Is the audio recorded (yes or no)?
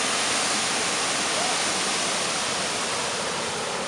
yes